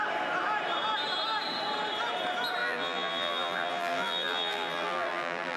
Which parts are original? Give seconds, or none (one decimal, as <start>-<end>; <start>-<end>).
0.0-2.6